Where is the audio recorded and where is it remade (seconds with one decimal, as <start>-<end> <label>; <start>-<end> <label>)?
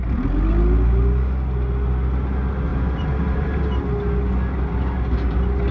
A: 0.0-2.7 recorded; 2.7-3.6 remade; 3.6-5.7 recorded